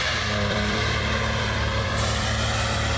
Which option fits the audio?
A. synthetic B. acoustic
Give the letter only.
A